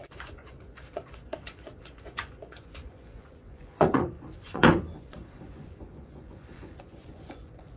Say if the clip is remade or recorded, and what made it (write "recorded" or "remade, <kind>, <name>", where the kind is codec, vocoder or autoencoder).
remade, vocoder, Vocos